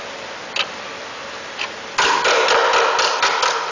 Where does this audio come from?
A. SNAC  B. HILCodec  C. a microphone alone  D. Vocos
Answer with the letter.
C